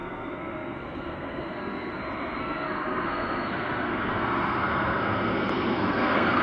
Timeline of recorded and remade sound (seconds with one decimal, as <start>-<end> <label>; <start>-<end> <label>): 0.0-2.0 remade; 2.0-2.4 recorded; 2.4-6.4 remade